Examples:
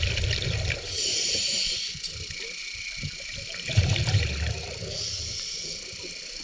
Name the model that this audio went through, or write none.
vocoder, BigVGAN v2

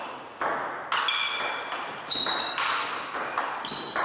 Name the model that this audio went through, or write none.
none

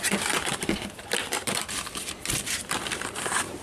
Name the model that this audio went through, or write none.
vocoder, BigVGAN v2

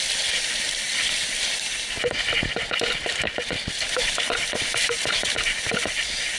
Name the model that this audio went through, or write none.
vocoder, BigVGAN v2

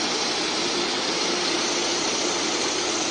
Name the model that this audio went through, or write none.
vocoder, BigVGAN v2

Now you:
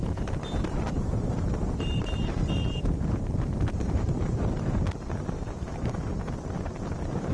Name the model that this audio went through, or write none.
vocoder, BigVGAN v2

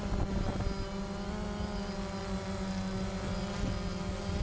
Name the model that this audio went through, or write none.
none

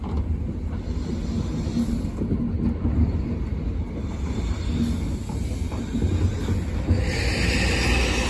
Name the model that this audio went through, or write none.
none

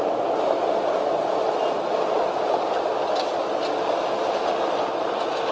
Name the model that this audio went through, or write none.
none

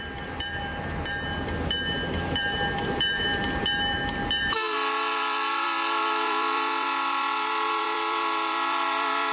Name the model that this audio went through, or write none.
vocoder, BigVGAN v2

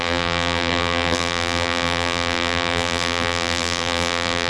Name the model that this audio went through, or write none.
vocoder, BigVGAN v2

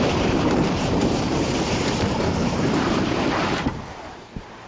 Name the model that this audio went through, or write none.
vocoder, BigVGAN v2